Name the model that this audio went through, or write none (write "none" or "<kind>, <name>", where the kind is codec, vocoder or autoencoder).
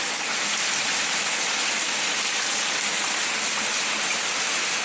none